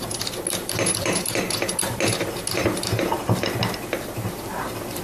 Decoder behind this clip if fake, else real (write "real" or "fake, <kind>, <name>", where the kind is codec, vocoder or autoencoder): real